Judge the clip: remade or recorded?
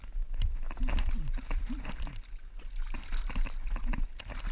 recorded